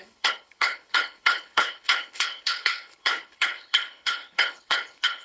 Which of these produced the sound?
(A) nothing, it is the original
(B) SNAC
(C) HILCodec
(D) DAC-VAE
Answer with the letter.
C